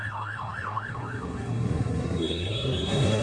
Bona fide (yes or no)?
no